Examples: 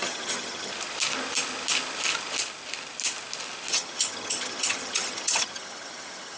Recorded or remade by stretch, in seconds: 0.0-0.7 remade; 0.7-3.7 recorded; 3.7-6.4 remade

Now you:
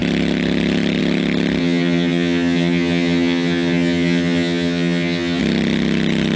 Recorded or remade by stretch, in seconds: 0.0-1.6 recorded; 1.6-5.4 remade; 5.4-6.4 recorded

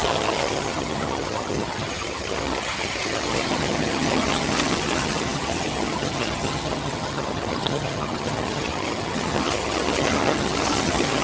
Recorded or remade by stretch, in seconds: 0.0-11.2 remade

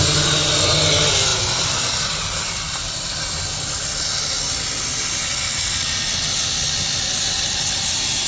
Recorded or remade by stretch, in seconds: 0.0-8.3 recorded

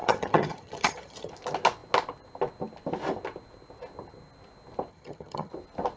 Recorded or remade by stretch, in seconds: 0.0-1.3 remade; 1.3-4.9 recorded; 4.9-5.5 remade; 5.5-6.0 recorded

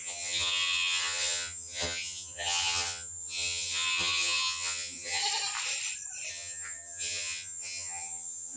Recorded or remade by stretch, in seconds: 0.0-5.2 remade; 5.2-6.3 recorded; 6.3-8.6 remade

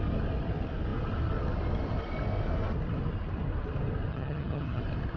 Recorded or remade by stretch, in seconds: 0.0-4.1 recorded; 4.1-4.8 remade; 4.8-5.2 recorded